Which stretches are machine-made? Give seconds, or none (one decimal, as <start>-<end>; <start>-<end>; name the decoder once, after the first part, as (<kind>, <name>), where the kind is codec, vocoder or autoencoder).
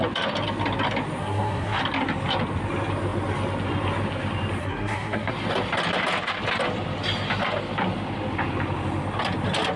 1.2-1.8 (codec, SNAC); 4.6-5.3